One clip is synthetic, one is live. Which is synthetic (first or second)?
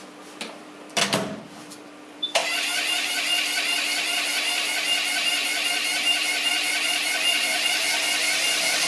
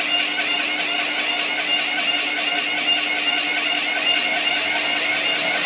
first